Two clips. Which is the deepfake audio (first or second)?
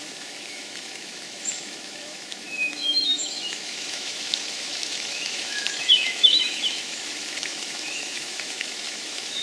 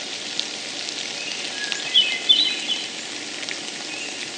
first